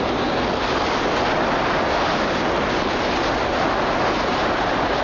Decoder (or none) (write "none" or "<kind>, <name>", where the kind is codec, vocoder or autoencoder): none